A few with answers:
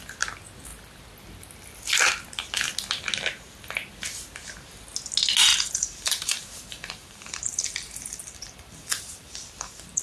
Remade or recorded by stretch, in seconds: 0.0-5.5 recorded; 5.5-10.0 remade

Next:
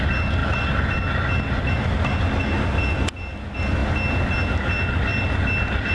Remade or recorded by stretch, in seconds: 0.0-0.4 recorded; 0.4-2.2 remade; 2.2-5.1 recorded; 5.1-5.9 remade

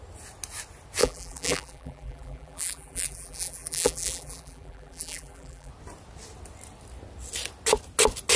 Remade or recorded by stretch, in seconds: 0.0-1.0 recorded; 1.0-5.7 remade; 5.7-8.4 recorded